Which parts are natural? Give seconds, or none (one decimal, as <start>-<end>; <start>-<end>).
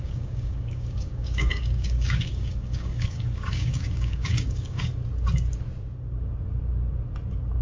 4.9-7.6